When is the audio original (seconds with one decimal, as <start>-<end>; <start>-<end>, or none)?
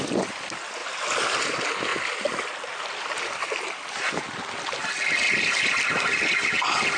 0.0-7.0